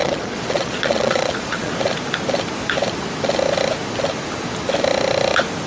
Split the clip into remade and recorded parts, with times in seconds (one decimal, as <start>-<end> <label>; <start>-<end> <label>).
0.0-1.7 remade; 1.7-5.7 recorded